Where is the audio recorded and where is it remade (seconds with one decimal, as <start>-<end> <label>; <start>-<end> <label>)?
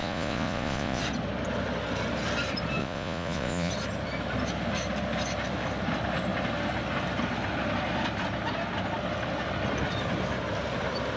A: 0.0-1.0 remade; 1.0-2.8 recorded; 2.8-3.7 remade; 3.7-11.2 recorded